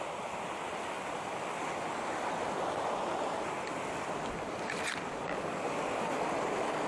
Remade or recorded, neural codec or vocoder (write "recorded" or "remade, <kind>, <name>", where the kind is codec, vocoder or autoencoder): recorded